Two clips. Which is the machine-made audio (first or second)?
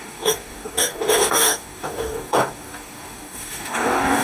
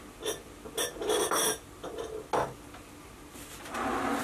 first